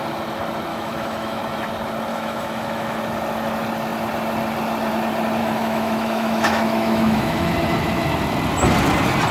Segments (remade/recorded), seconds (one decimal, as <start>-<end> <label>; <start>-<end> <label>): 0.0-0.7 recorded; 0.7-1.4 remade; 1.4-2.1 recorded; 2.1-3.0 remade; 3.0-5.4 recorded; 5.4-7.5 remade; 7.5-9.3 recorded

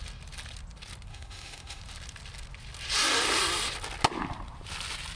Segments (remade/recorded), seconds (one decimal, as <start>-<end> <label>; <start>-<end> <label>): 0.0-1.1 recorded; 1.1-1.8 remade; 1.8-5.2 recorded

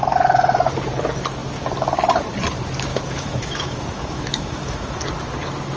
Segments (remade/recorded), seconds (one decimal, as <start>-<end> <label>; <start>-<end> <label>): 0.0-2.9 recorded; 2.9-5.0 remade; 5.0-5.8 recorded

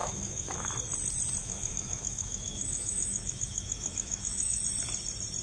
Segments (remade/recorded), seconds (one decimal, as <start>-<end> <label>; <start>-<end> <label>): 0.0-0.7 remade; 0.7-1.4 recorded; 1.4-4.6 remade; 4.6-5.4 recorded